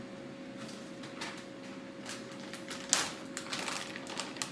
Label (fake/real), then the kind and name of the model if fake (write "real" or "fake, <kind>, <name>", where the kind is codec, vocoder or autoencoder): real